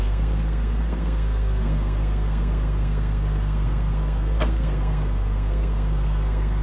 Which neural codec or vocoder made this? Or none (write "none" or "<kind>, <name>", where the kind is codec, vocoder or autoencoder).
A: codec, SNAC